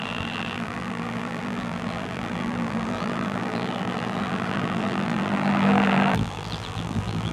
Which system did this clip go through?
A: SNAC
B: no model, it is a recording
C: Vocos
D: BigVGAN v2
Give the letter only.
D